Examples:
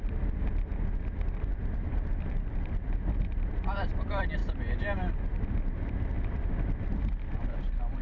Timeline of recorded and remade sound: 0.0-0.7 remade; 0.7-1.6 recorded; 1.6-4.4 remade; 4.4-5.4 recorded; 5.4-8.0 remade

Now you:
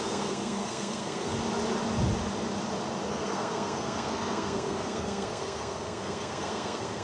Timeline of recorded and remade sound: 0.0-1.3 remade; 1.3-3.1 recorded; 3.1-7.0 remade

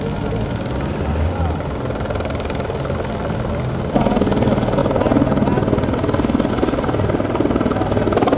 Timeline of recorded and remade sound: 0.0-8.4 recorded

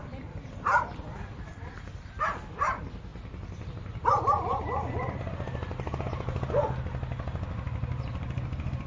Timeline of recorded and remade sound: 0.0-8.9 recorded

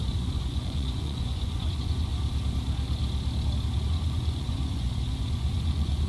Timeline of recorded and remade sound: 0.0-2.1 remade; 2.1-3.9 recorded; 3.9-6.1 remade

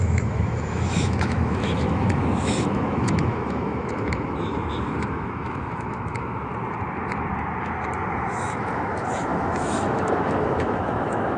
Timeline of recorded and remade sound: 0.0-6.5 remade; 6.5-8.3 recorded; 8.3-11.4 remade

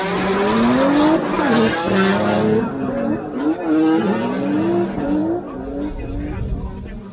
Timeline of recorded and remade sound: 0.0-7.1 recorded